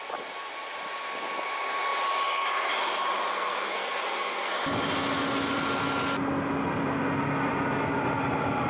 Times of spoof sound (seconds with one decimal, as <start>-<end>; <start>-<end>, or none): 3.3-4.5